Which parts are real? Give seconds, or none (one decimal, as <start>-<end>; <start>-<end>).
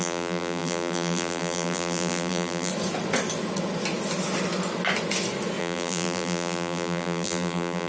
2.7-5.6